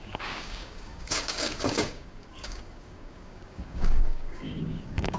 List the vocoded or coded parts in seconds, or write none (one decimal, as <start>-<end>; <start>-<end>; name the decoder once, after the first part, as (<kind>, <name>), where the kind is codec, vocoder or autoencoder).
0.0-5.2 (codec, DAC)